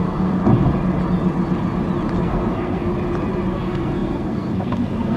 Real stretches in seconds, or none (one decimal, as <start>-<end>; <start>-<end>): 0.4-2.2; 2.9-3.5